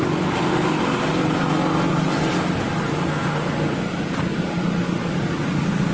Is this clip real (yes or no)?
yes